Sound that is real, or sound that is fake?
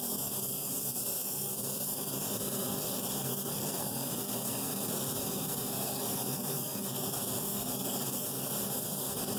fake